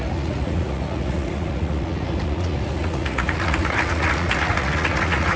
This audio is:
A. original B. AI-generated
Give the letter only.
B